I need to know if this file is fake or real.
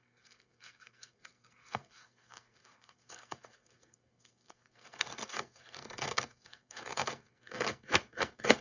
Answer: fake